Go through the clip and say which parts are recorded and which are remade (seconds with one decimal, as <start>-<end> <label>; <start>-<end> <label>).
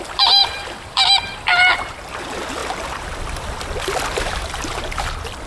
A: 0.0-2.6 remade; 2.6-4.2 recorded; 4.2-5.5 remade